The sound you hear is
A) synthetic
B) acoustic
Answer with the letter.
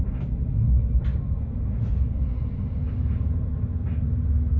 B